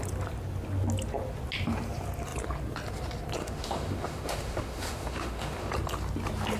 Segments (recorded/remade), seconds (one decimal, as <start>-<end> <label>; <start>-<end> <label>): 0.0-3.4 recorded; 3.4-5.7 remade; 5.7-6.6 recorded

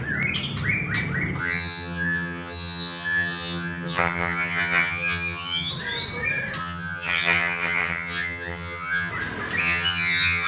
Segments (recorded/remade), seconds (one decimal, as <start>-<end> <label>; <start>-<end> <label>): 0.0-1.4 recorded; 1.4-5.7 remade; 5.7-6.6 recorded; 6.6-9.1 remade; 9.1-9.6 recorded; 9.6-10.5 remade

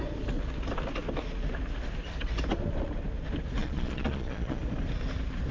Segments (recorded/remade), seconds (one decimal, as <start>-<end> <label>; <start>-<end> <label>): 0.0-3.6 recorded; 3.6-4.6 remade; 4.6-5.5 recorded

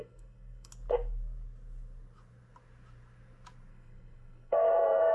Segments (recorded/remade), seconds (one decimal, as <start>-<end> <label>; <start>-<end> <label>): 0.0-0.7 remade; 0.7-3.7 recorded; 3.7-5.1 remade

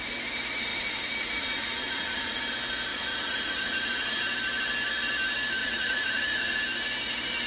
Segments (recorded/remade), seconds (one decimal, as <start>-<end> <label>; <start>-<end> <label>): 0.0-0.7 recorded; 0.7-2.4 remade; 2.4-2.9 recorded; 2.9-4.2 remade; 4.2-5.6 recorded; 5.6-6.6 remade; 6.6-7.5 recorded

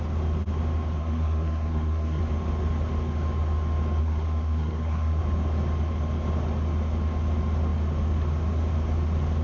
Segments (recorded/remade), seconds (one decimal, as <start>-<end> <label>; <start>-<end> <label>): 0.0-1.0 recorded; 1.0-2.2 remade; 2.2-4.0 recorded; 4.0-5.2 remade; 5.2-9.4 recorded

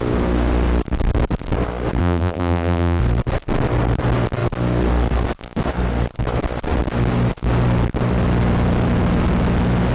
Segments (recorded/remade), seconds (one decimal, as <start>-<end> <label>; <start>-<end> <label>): 0.0-2.0 recorded; 2.0-3.0 remade; 3.0-9.9 recorded

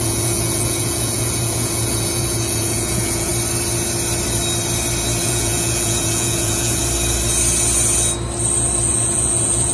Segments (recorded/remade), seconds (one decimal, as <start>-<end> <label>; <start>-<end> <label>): 0.0-3.3 remade; 3.3-5.2 recorded; 5.2-6.8 remade; 6.8-8.9 recorded; 8.9-9.7 remade